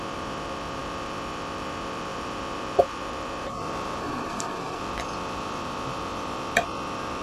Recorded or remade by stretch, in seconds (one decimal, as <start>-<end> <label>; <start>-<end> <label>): 0.0-4.0 recorded; 4.0-4.8 remade; 4.8-7.2 recorded